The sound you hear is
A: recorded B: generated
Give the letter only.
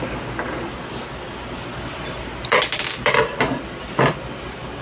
A